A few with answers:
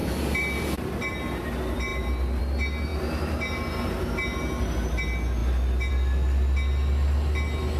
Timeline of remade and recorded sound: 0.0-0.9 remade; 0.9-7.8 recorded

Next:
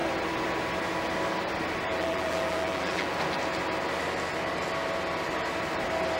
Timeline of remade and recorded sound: 0.0-1.9 recorded; 1.9-3.1 remade; 3.1-6.2 recorded

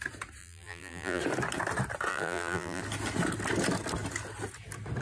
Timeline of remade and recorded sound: 0.0-0.4 recorded; 0.4-1.2 remade; 1.2-2.1 recorded; 2.1-2.8 remade; 2.8-5.0 recorded

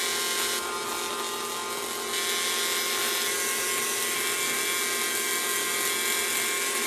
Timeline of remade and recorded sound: 0.0-6.9 recorded

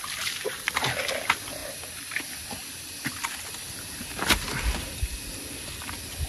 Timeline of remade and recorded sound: 0.0-6.3 recorded

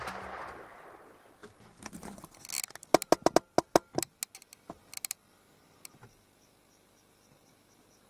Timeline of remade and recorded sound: 0.0-8.1 recorded

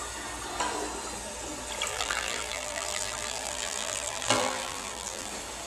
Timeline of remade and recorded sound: 0.0-1.9 recorded; 1.9-5.3 remade; 5.3-5.7 recorded

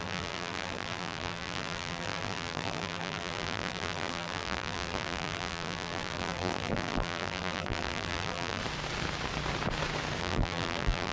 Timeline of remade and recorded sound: 0.0-8.6 remade; 8.6-10.2 recorded; 10.2-11.1 remade